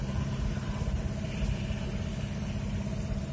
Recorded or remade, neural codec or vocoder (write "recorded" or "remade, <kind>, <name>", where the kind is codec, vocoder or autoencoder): recorded